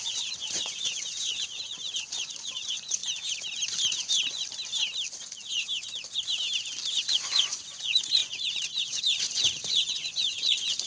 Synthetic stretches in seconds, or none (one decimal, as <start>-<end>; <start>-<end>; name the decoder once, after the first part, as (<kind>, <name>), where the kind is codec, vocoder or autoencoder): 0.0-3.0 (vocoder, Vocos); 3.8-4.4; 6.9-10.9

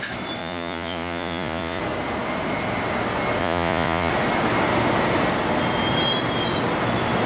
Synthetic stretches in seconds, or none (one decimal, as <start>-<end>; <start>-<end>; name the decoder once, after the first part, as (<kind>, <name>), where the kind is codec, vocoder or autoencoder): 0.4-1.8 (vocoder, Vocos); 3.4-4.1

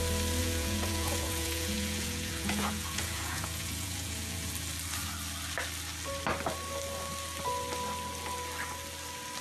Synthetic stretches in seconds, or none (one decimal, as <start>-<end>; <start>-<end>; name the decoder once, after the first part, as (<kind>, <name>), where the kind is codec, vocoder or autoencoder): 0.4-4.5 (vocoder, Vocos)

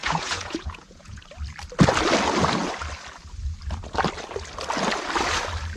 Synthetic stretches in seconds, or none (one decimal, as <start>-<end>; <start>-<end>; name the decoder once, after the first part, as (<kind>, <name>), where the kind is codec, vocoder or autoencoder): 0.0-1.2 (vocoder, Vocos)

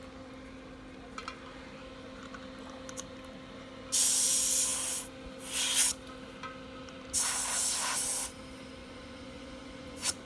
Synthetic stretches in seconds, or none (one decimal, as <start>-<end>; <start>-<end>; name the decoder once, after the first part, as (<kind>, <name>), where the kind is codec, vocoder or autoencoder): 8.8-10.3 (vocoder, Vocos)

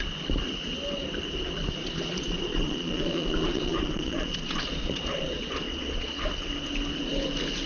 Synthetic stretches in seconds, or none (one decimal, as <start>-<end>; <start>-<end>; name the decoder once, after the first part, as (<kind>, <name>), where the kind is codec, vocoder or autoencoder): 1.8-6.3 (vocoder, Vocos)

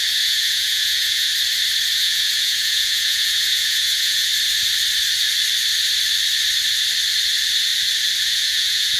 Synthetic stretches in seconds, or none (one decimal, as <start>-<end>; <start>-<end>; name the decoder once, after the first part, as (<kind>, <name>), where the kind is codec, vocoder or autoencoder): 0.0-1.3 (vocoder, Vocos); 1.9-4.3; 8.2-9.0

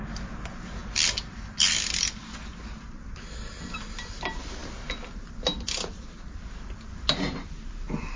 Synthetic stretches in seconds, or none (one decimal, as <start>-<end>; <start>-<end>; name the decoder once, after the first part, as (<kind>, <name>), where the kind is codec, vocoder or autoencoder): none